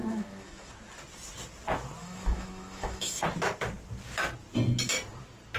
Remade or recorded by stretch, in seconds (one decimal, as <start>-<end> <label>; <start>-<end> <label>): 0.0-0.7 remade; 0.7-2.0 recorded; 2.0-3.2 remade; 3.2-5.6 recorded